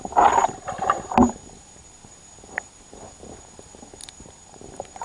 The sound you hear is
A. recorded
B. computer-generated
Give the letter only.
B